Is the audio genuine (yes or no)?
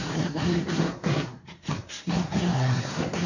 no